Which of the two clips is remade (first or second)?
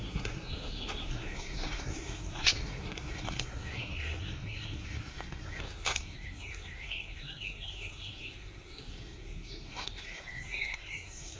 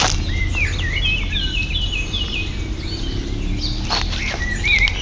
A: first